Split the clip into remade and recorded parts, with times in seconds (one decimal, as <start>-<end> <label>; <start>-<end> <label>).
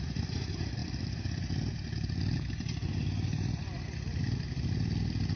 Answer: 0.0-5.4 recorded